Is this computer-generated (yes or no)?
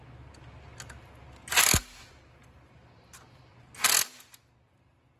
no